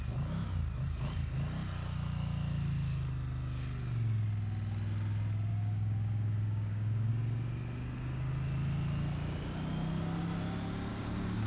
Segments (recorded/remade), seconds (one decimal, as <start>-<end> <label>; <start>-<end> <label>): 0.0-5.5 recorded; 5.5-7.1 remade; 7.1-10.9 recorded; 10.9-11.5 remade

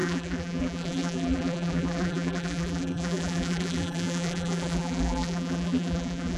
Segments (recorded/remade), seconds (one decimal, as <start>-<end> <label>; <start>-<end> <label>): 0.0-6.4 remade

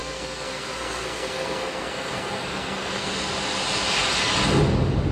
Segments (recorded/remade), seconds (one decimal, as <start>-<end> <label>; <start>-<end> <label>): 0.0-3.1 remade; 3.1-5.1 recorded

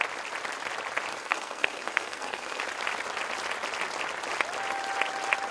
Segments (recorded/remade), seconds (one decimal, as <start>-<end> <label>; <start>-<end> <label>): 0.0-1.1 recorded; 1.1-2.6 remade; 2.6-5.5 recorded

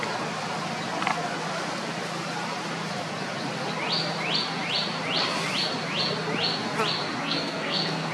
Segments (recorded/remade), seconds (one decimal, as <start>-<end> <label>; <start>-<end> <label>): 0.0-7.2 recorded; 7.2-8.1 remade

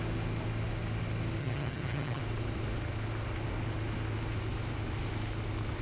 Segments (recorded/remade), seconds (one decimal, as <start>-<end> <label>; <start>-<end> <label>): 0.0-1.4 recorded; 1.4-2.2 remade; 2.2-5.8 recorded

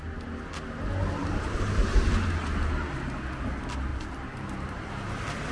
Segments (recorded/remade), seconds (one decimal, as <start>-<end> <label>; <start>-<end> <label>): 0.0-1.2 recorded; 1.2-2.1 remade; 2.1-3.9 recorded; 3.9-4.9 remade; 4.9-5.5 recorded